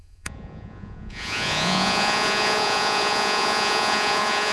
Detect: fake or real fake